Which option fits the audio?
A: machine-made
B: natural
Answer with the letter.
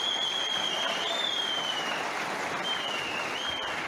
B